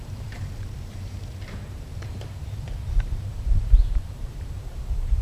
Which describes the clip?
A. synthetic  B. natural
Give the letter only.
A